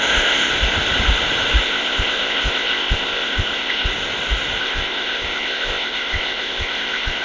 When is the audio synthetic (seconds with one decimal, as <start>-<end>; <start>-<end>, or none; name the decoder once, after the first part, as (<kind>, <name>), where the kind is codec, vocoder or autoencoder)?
0.0-0.5 (codec, ZipCodec); 1.6-3.9; 4.6-7.2